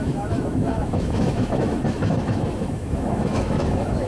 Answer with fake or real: fake